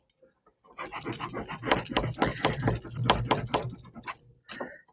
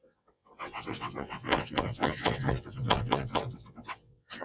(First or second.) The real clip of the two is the first